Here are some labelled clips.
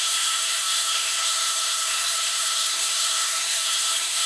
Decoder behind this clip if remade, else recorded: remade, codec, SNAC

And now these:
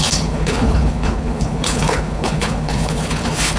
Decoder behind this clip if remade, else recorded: remade, codec, HILCodec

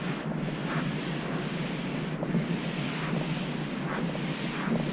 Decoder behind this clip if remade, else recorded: recorded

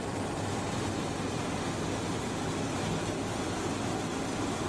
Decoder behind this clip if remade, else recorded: recorded